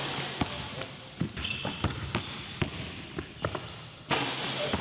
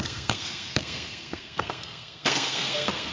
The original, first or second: first